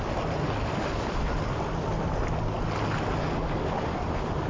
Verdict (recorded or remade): recorded